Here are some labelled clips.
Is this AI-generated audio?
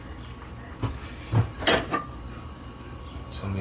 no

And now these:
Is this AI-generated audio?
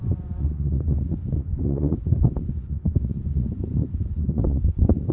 yes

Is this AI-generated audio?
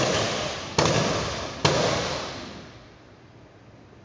no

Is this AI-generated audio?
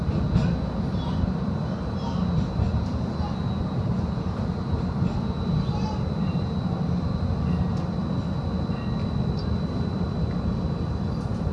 no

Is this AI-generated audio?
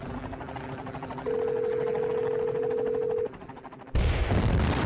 no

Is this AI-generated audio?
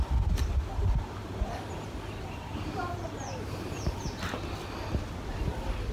no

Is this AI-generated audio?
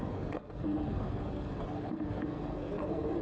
yes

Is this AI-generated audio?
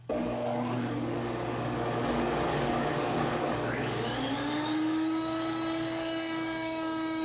yes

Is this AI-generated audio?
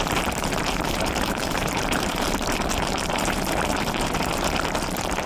yes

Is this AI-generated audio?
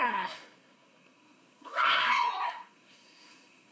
yes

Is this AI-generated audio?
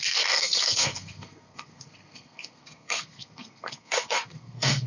yes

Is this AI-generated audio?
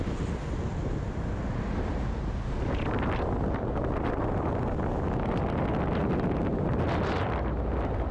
no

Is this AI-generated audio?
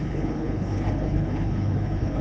yes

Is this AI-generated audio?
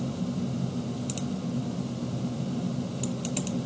no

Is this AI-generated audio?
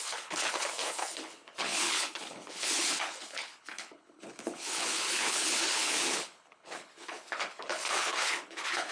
yes